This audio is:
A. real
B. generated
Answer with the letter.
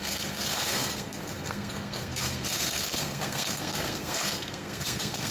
B